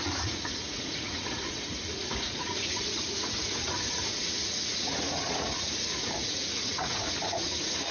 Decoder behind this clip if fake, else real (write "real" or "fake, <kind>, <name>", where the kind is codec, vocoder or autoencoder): fake, vocoder, Vocos